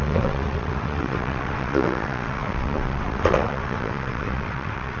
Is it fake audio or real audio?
fake